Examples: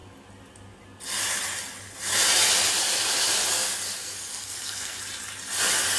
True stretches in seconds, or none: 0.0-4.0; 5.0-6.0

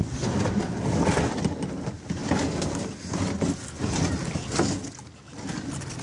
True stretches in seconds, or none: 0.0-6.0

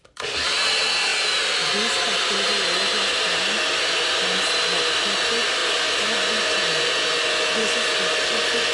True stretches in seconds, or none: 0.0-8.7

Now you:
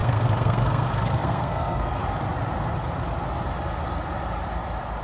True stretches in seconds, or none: 2.0-5.0

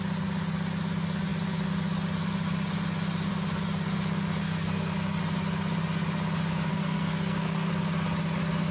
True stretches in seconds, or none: 0.0-4.4; 5.2-6.7; 7.7-8.7